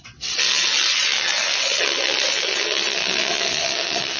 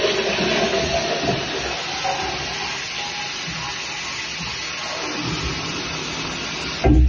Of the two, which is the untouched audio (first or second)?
second